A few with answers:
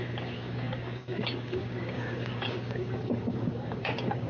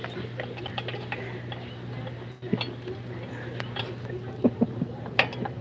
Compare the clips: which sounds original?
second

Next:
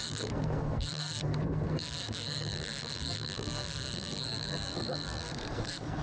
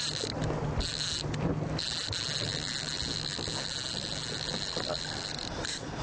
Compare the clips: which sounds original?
second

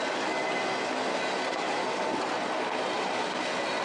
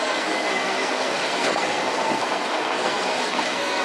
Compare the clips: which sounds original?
first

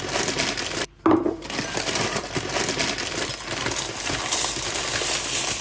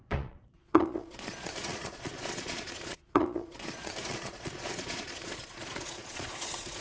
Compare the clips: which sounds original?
first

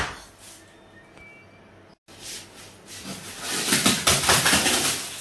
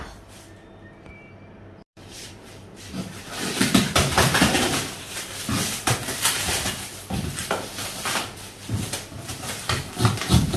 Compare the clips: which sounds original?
first